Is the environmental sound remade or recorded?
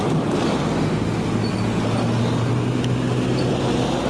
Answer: recorded